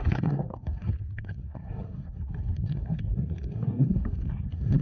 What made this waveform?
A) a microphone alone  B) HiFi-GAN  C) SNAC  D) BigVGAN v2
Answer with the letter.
C